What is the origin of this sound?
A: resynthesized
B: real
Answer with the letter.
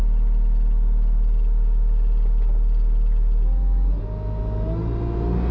B